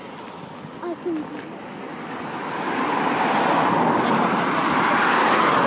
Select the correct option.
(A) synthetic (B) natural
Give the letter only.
B